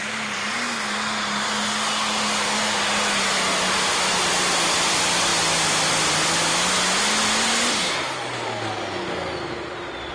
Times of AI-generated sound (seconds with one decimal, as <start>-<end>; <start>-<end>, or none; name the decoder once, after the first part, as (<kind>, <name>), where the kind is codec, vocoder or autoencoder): none